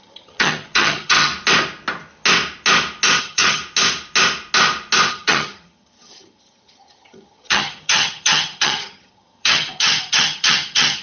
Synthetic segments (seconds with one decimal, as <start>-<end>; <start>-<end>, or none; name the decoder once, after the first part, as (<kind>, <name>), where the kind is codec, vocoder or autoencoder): 0.0-1.3 (vocoder, HiFi-GAN); 3.2-3.6; 5.1-11.0